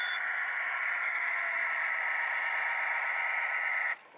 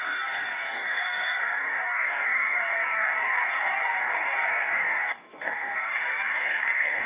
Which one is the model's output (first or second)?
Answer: second